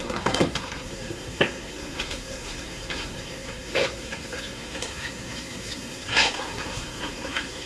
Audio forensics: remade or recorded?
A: remade